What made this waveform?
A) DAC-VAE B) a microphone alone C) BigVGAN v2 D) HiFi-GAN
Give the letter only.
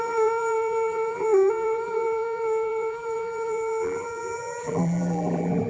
C